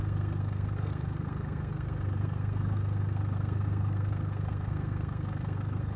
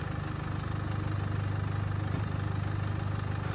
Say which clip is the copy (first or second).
first